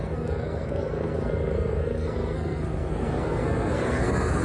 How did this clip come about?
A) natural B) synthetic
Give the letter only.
B